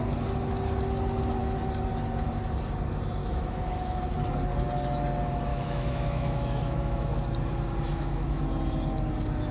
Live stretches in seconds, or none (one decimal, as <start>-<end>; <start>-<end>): 0.0-3.2; 4.0-5.5; 7.1-7.9; 8.4-9.5